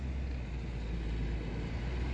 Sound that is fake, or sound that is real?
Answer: real